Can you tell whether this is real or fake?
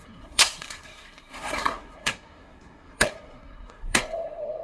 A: fake